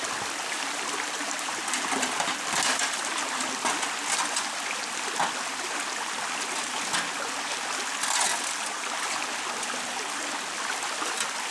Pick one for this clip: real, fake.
real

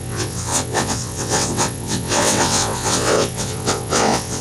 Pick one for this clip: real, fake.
fake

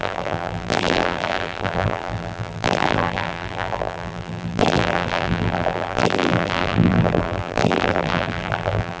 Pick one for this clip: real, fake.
fake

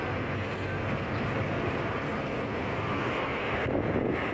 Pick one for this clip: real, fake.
real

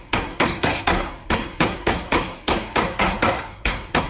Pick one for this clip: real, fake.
fake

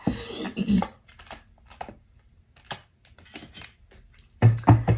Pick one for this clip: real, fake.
real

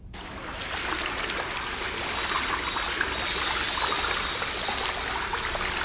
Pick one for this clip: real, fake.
real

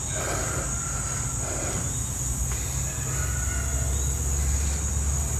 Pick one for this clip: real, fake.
real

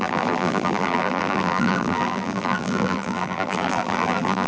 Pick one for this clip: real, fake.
fake